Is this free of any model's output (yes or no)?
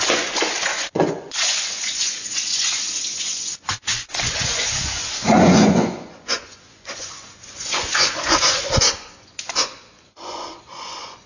no